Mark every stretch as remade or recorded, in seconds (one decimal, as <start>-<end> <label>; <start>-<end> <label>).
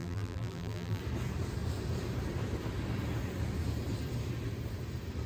0.0-1.0 remade; 1.0-5.3 recorded